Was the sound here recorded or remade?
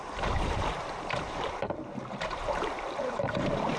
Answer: remade